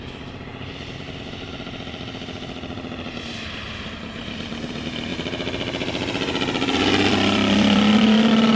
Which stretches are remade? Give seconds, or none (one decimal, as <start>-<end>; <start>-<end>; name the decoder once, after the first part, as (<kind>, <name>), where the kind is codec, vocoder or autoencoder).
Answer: 0.0-8.6 (vocoder, BigVGAN v2)